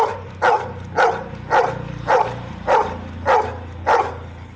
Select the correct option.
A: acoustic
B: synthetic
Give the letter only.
A